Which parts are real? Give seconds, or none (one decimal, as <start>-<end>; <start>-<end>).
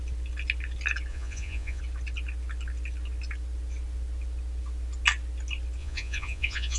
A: 0.0-1.1; 1.8-5.8